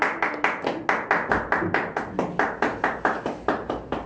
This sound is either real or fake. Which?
real